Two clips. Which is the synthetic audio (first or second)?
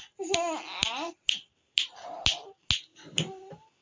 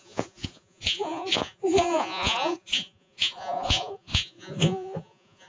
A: second